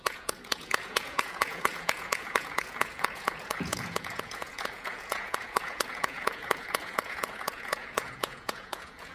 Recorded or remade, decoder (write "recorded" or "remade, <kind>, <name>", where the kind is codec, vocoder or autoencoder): remade, vocoder, Vocos